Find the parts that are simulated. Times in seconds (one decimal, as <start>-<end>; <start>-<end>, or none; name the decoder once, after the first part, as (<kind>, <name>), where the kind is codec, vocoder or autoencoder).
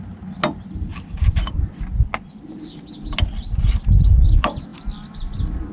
none